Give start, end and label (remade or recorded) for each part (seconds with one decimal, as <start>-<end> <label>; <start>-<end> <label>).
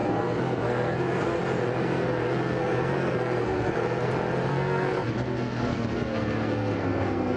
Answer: 0.0-1.4 remade; 1.4-1.8 recorded; 1.8-4.1 remade; 4.1-4.5 recorded; 4.5-7.4 remade